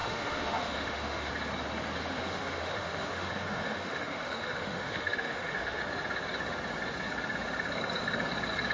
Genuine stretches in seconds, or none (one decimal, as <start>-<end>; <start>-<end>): 1.3-2.0; 5.8-8.7